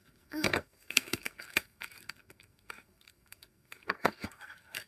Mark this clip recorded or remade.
remade